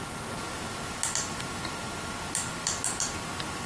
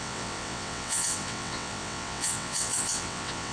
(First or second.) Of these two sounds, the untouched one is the first